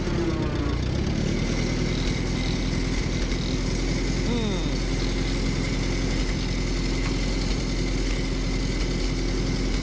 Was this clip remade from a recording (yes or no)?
no